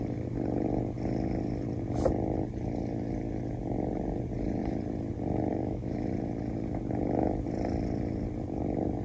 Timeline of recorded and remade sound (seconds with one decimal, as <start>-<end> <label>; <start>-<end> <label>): 0.0-5.5 recorded; 5.5-6.1 remade; 6.1-9.0 recorded